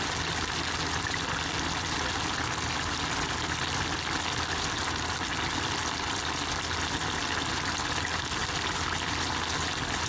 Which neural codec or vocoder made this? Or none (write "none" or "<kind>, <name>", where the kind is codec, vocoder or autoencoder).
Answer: none